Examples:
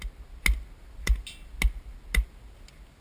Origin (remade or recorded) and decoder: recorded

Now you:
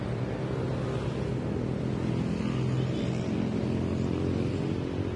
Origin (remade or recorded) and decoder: recorded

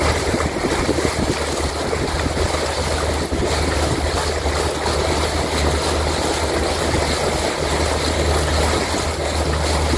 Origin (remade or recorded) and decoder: recorded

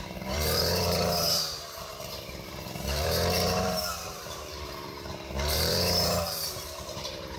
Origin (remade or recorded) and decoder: remade, vocoder, BigVGAN v2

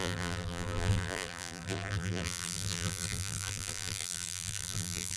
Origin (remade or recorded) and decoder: remade, vocoder, BigVGAN v2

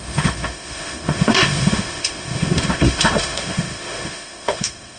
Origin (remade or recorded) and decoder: remade, autoencoder, DAC-VAE